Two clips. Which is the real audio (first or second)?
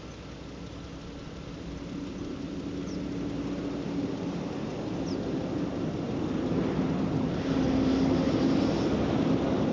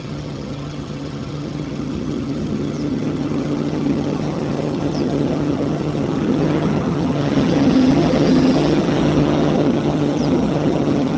first